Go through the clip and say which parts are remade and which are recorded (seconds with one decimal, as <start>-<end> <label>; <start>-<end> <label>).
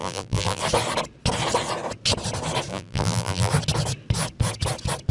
0.0-0.6 remade; 0.6-2.7 recorded; 2.7-3.5 remade; 3.5-5.1 recorded